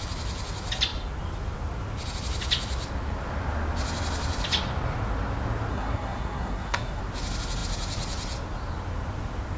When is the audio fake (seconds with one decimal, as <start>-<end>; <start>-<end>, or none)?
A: 5.7-7.0